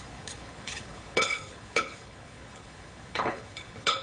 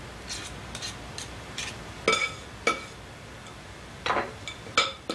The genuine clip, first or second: second